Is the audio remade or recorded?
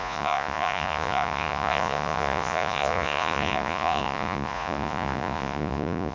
remade